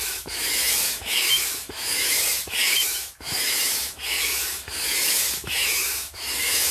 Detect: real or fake fake